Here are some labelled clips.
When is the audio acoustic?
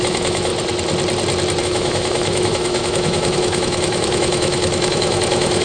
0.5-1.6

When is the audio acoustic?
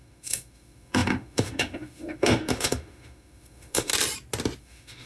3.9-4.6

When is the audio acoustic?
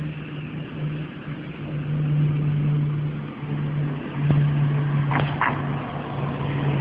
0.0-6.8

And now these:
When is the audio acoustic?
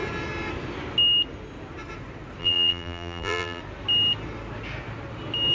0.0-2.4; 3.6-5.5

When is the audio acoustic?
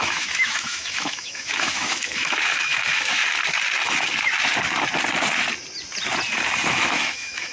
3.2-6.7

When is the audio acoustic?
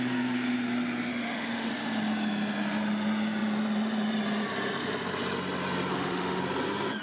0.0-1.1; 1.7-5.9; 6.4-7.0